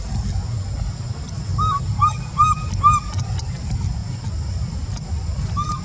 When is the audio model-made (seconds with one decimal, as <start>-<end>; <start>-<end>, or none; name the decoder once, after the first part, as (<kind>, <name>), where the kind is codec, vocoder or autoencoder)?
none

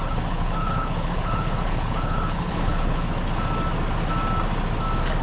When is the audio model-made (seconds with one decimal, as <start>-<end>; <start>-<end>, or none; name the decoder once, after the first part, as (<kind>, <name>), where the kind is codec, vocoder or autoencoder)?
0.0-3.1 (codec, HILCodec)

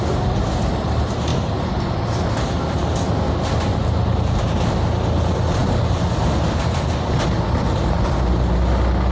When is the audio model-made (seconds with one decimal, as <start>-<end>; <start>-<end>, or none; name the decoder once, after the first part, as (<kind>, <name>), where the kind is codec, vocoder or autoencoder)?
none

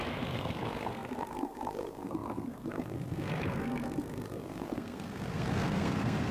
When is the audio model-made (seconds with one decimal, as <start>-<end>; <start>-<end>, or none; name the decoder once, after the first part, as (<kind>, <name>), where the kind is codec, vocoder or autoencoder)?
0.0-6.3 (codec, SNAC)